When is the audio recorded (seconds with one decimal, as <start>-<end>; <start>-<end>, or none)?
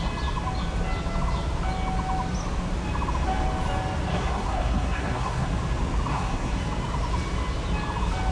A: 0.0-4.1; 5.5-6.1; 6.6-8.3